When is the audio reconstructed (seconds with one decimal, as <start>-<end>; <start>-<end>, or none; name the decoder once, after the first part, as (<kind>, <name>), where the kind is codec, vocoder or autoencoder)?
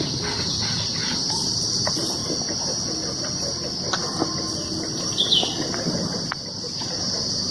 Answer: 1.0-1.8 (vocoder, BigVGAN v2)